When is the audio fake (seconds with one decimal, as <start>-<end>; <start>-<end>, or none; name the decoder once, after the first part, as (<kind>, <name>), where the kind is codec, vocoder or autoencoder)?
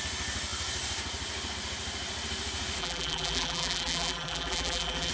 2.8-5.1 (vocoder, BigVGAN v2)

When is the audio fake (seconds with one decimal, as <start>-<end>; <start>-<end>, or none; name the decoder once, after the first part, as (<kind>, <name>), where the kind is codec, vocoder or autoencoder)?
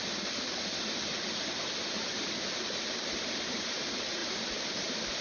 4.2-5.2 (vocoder, BigVGAN v2)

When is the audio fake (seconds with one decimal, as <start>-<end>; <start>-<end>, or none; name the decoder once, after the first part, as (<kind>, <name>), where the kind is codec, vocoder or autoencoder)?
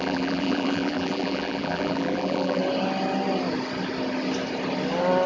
0.0-2.6 (vocoder, BigVGAN v2)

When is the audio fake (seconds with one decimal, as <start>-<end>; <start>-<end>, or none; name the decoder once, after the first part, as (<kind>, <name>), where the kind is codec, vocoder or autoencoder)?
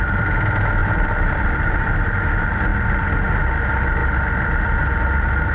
0.8-2.0 (vocoder, BigVGAN v2); 4.0-4.9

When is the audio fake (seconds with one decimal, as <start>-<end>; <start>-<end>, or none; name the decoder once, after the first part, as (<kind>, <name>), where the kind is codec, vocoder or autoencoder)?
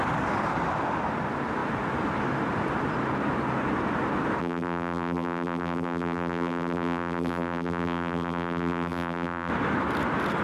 4.4-9.5 (vocoder, BigVGAN v2)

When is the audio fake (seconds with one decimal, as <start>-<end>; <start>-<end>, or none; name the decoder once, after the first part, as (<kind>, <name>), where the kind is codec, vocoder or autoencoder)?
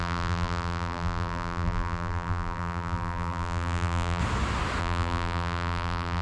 0.0-4.2 (vocoder, BigVGAN v2); 4.8-6.2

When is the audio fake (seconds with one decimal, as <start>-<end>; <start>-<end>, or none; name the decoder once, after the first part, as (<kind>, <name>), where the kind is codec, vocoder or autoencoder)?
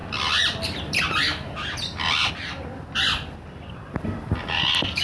0.0-2.3 (vocoder, BigVGAN v2)